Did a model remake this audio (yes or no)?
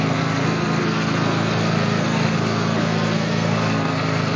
yes